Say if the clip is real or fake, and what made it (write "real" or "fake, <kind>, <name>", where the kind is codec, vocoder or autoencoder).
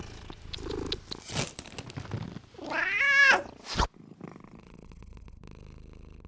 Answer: real